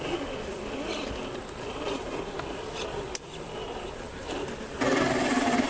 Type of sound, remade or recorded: remade